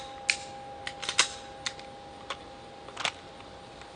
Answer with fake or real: real